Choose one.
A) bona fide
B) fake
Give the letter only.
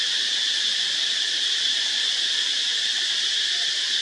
A